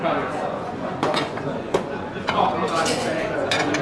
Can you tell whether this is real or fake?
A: fake